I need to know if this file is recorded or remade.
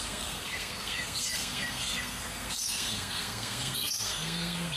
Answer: remade